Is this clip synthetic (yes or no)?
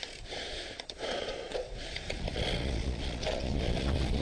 yes